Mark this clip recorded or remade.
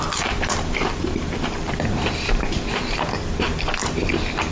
remade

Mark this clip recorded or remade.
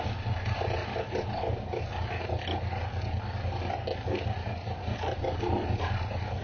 recorded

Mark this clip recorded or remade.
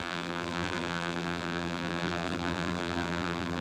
remade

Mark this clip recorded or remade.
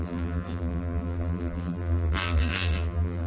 remade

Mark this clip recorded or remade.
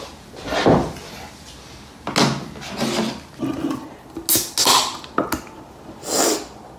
recorded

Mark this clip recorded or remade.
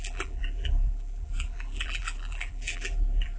remade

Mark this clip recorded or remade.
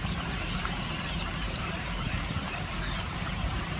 remade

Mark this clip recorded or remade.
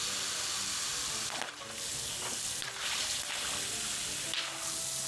recorded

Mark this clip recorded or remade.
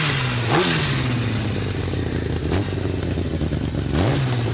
recorded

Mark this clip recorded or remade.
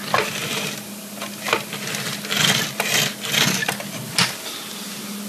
recorded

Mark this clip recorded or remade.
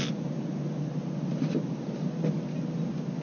recorded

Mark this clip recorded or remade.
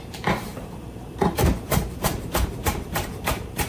remade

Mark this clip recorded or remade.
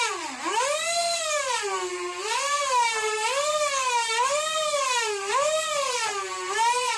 recorded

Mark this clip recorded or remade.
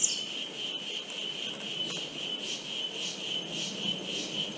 recorded